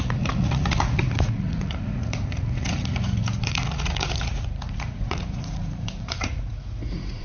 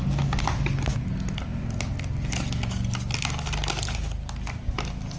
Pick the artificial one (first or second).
first